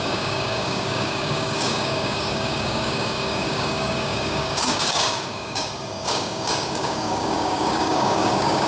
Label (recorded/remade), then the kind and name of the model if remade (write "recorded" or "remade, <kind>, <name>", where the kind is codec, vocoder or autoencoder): remade, codec, DAC